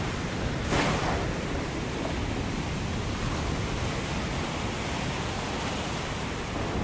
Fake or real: real